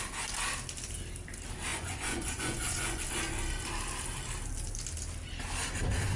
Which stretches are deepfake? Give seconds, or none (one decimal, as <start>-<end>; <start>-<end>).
1.7-3.0